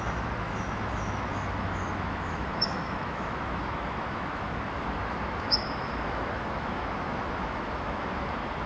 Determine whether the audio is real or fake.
fake